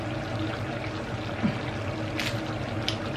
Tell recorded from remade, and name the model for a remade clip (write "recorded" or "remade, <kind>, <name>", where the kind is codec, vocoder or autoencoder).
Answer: recorded